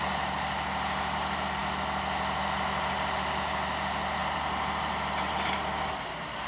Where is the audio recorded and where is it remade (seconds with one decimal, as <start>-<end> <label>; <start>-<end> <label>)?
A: 0.0-6.5 recorded